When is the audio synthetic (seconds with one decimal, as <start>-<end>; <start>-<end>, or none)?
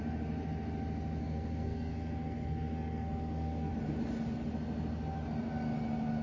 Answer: 1.2-3.7